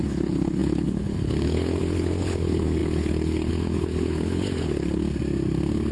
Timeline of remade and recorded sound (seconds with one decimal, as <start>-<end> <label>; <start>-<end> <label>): 0.0-5.0 remade; 5.0-5.9 recorded